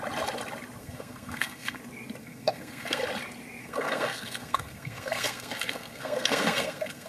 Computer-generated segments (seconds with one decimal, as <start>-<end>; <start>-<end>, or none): 0.8-1.8; 2.2-3.0; 3.6-7.1